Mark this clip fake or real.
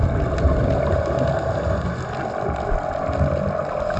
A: real